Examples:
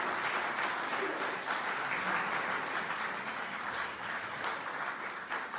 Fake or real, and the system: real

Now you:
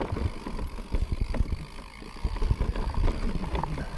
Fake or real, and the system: fake, vocoder, BigVGAN v2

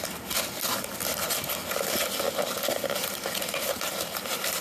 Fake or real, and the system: real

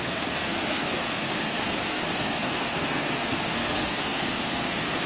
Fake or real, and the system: fake, codec, SNAC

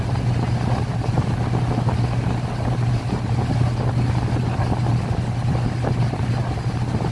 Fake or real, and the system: real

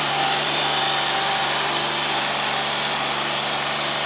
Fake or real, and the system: fake, vocoder, BigVGAN v2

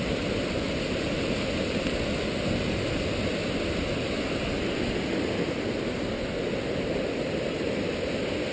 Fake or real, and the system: real